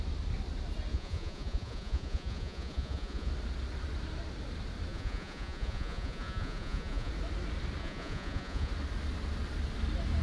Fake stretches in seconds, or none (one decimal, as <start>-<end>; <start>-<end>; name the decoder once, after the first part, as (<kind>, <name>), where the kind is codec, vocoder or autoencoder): 0.9-3.3 (vocoder, Vocos); 4.9-7.1; 7.8-8.7